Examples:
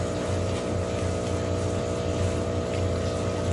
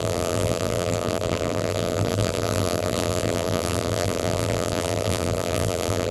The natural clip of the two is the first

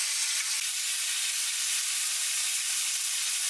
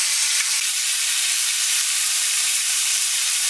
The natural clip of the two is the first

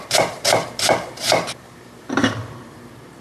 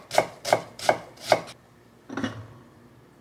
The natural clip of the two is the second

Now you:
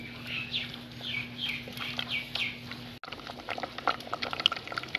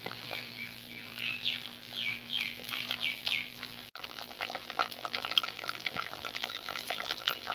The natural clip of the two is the first